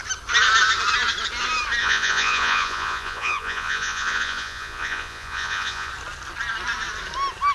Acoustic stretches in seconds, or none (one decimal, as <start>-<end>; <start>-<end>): 0.0-1.8; 5.9-7.5